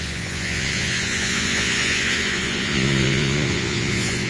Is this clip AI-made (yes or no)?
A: yes